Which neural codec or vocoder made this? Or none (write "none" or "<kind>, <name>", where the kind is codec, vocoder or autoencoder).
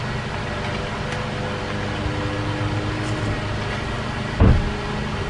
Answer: none